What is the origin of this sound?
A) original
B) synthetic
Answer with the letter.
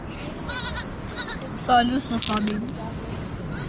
A